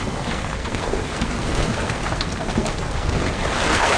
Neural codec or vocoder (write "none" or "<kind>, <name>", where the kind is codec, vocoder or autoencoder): codec, SNAC